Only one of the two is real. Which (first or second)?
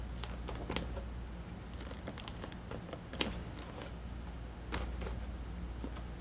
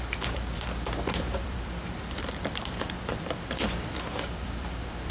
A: first